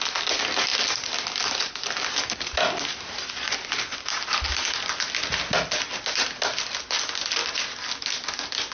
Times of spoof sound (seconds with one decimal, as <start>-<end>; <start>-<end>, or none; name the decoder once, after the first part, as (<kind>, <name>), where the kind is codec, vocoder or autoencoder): none